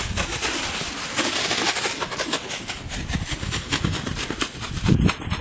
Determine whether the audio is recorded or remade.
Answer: recorded